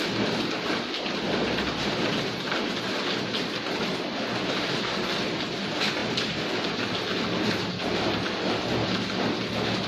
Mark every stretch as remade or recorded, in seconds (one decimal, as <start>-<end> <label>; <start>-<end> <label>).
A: 0.0-9.9 recorded